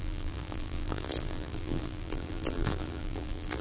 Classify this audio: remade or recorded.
remade